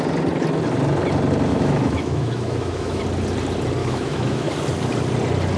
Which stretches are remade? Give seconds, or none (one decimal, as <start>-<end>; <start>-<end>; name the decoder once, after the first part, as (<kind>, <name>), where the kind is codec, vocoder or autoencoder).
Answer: 1.5-3.0 (autoencoder, DAC-VAE); 3.8-4.5